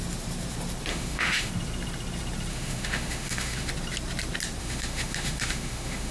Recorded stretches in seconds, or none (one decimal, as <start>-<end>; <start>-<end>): 0.0-0.9; 1.5-2.5; 3.7-4.6